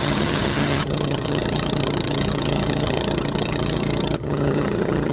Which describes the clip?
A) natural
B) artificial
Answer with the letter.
B